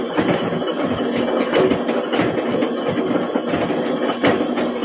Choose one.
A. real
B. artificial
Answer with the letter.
A